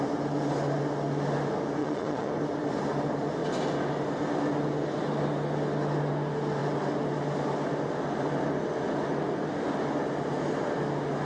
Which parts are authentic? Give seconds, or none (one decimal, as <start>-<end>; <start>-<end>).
0.0-1.8; 2.3-11.2